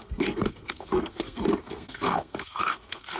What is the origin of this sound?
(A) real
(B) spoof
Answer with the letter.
B